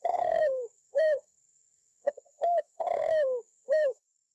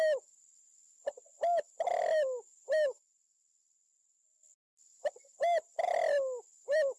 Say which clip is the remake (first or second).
first